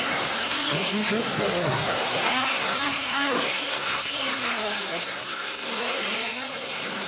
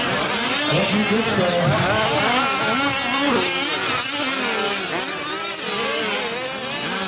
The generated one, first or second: first